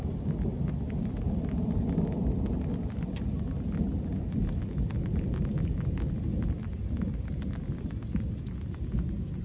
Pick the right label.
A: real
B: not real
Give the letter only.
A